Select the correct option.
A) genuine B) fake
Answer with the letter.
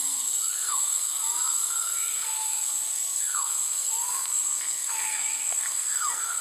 B